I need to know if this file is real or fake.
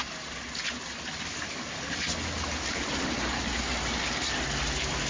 real